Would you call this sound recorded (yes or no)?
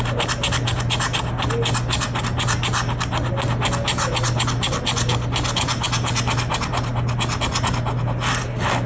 yes